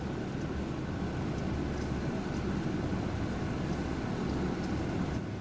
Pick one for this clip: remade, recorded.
recorded